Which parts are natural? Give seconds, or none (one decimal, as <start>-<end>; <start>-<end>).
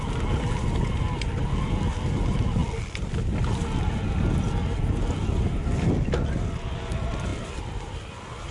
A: 0.0-8.5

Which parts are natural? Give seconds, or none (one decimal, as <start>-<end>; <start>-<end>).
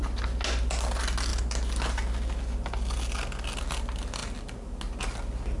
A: 0.0-5.6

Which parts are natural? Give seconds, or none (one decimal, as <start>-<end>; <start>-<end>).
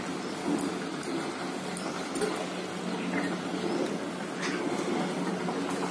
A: 0.0-5.9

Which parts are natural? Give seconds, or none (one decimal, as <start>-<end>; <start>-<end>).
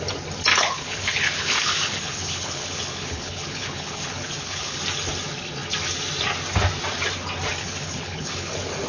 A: 0.0-0.5; 4.8-7.6; 8.5-8.9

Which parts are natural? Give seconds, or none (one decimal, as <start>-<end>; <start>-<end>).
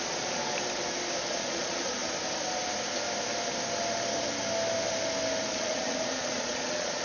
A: 0.4-1.3; 2.0-5.5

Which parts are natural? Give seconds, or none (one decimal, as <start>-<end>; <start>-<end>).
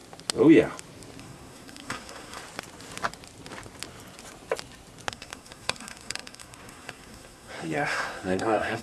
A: 0.0-1.2; 2.4-5.1